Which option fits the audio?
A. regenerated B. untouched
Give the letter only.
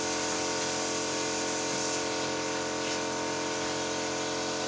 B